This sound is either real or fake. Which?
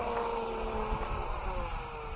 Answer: real